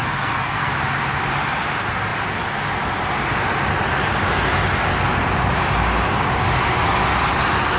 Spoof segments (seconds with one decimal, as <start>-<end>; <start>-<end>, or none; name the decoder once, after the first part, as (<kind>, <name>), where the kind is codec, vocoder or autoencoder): 0.0-0.7 (codec, SNAC)